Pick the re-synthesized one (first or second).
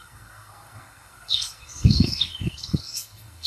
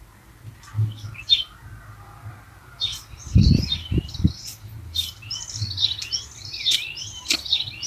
first